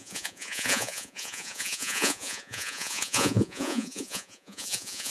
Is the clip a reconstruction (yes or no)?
yes